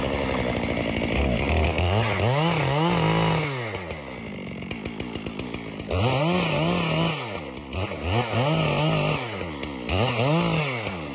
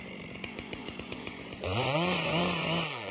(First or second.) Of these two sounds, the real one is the first